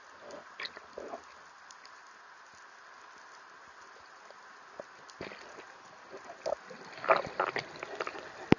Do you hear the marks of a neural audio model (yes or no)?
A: no